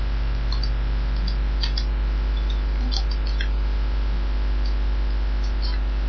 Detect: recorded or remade recorded